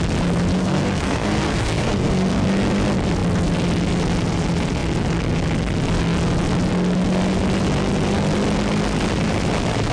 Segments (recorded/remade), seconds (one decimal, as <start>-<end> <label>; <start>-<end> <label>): 0.0-0.6 recorded; 0.6-2.5 remade; 2.5-9.9 recorded